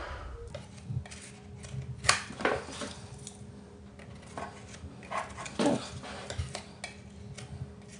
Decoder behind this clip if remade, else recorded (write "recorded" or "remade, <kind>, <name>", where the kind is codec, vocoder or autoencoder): recorded